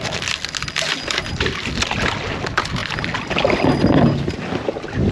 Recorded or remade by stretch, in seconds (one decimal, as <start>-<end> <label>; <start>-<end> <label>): 0.0-5.1 recorded